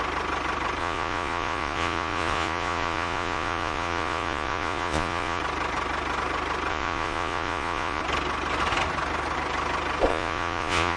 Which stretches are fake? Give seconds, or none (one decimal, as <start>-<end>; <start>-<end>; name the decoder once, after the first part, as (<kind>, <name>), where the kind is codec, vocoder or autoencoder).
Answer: 0.8-5.4 (vocoder, Vocos); 6.7-8.0; 10.1-11.0

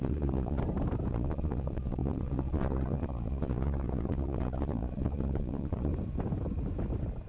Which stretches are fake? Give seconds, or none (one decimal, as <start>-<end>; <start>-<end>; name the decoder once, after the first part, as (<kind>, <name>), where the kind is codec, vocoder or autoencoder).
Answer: 0.0-0.6 (vocoder, Vocos); 1.1-5.9

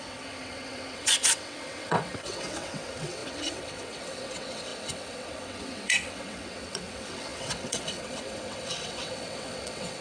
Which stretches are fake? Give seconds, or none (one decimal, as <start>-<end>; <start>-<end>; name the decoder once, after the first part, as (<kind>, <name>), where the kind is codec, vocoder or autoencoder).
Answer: 0.0-10.0 (vocoder, WaveNeXt)

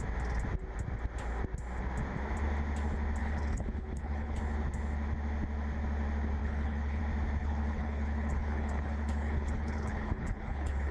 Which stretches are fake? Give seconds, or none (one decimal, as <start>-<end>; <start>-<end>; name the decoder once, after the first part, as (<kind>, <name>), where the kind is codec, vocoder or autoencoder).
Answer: 3.2-4.4 (codec, HILCodec); 6.4-7.0; 7.4-10.9

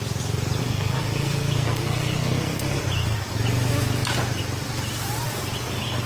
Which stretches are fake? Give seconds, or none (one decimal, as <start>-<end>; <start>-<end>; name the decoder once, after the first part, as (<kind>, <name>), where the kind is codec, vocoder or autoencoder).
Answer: 0.6-2.8 (codec, SNAC)

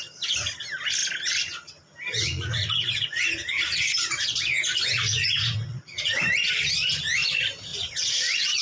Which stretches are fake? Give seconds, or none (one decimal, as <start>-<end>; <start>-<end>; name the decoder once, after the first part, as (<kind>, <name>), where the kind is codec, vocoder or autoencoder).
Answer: 2.2-6.3 (vocoder, Vocos); 7.7-8.6

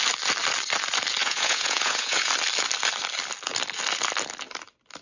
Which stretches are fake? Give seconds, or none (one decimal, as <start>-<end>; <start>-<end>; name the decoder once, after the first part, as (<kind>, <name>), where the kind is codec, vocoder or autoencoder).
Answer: 1.2-2.3 (vocoder, Vocos)

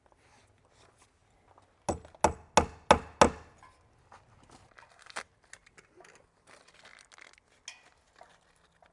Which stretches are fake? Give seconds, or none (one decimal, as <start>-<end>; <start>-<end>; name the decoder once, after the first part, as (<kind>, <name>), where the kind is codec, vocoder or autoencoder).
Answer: none